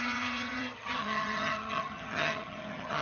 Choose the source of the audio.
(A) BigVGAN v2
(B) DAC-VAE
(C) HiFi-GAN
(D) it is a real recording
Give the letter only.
C